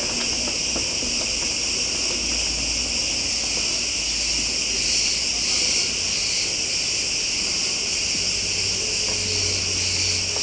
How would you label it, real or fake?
real